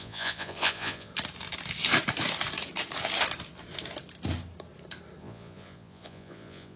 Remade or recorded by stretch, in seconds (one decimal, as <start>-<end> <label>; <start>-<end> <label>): 0.0-1.1 remade; 1.1-5.2 recorded; 5.2-6.8 remade